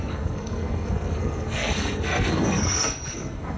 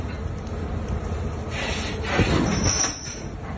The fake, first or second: first